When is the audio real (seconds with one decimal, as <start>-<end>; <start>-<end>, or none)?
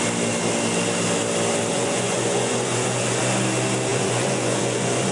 0.0-1.7; 3.2-3.9